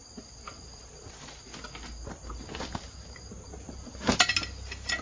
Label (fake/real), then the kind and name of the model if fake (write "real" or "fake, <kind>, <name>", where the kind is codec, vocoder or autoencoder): real